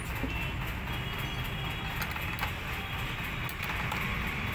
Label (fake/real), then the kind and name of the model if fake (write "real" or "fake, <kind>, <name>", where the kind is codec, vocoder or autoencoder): real